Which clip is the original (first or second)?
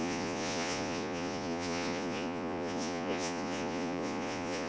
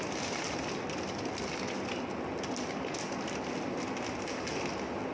second